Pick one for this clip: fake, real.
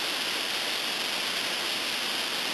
real